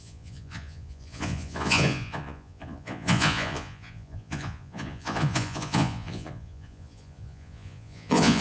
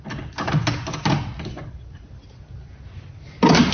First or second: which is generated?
first